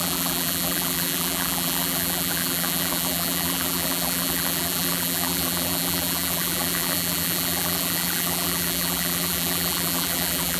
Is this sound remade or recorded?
remade